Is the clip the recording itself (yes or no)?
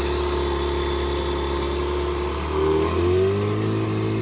yes